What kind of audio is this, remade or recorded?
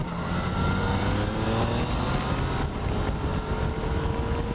recorded